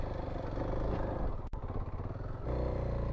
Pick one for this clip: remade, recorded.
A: recorded